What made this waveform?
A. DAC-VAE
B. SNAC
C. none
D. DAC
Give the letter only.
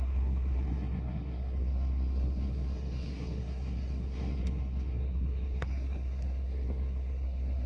B